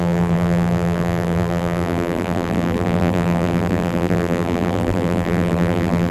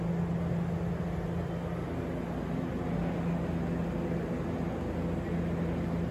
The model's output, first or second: first